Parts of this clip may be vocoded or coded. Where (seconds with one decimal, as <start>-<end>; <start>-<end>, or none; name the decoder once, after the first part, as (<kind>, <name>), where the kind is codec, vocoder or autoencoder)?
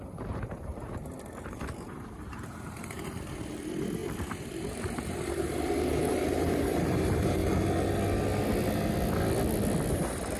0.0-0.7 (vocoder, BigVGAN v2); 1.4-7.4; 9.9-10.4